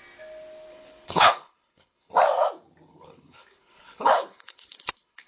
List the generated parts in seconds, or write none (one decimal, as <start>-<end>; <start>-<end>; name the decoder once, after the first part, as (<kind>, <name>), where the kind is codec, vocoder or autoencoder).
0.7-2.1 (codec, HILCodec); 2.9-5.3